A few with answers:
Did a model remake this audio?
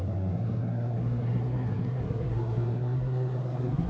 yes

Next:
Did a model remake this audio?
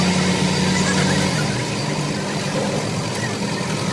no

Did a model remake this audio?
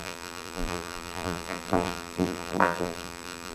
yes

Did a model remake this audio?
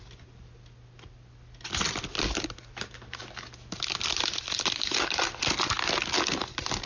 no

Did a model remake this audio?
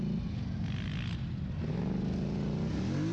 no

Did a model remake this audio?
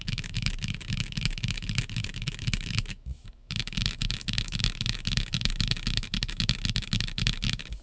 yes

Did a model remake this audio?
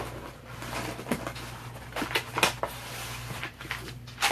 no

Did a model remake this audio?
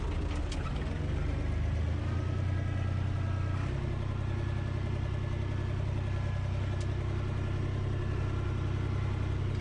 no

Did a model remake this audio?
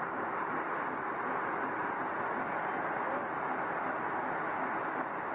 no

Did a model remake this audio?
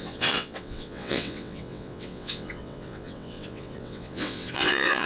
yes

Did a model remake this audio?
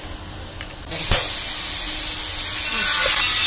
no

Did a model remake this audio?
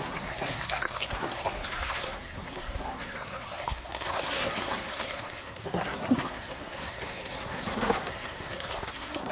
yes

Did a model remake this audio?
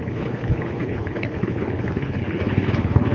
yes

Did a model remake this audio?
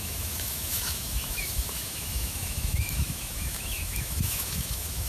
yes